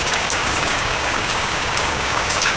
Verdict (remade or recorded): remade